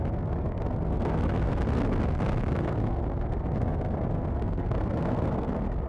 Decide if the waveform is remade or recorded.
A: remade